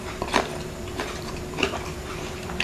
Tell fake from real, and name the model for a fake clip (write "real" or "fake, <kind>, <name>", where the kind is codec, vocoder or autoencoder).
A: fake, vocoder, BigVGAN v2